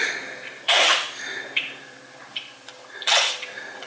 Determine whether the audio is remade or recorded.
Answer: remade